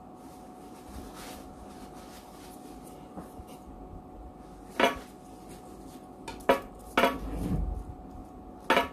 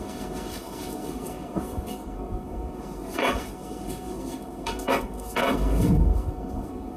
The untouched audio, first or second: first